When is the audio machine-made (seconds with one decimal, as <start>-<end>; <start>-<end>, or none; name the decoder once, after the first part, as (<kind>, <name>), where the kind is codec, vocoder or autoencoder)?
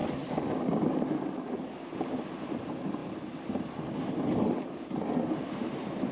none